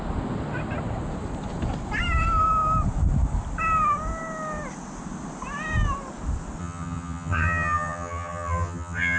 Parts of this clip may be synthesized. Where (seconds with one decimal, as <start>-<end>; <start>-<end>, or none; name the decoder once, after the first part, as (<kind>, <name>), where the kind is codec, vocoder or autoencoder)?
6.6-9.2 (vocoder, HiFi-GAN)